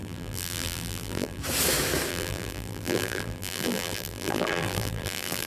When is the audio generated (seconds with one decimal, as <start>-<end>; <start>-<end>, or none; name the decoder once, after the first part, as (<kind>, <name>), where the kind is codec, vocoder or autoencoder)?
0.0-1.4 (vocoder, BigVGAN v2); 2.1-5.5